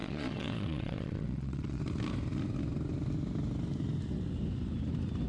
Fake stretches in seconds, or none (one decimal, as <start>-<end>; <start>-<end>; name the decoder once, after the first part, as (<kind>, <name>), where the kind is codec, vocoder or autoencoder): 0.0-1.8 (vocoder, Vocos)

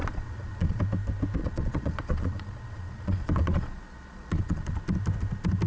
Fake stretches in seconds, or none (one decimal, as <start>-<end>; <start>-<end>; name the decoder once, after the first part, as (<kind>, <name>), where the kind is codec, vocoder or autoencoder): 0.0-0.8 (vocoder, Vocos); 1.4-4.8